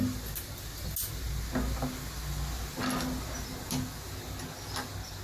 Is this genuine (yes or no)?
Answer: yes